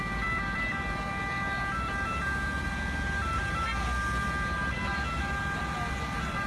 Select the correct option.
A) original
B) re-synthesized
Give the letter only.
A